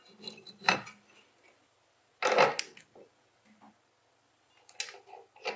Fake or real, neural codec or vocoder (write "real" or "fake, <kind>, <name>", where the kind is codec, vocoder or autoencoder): real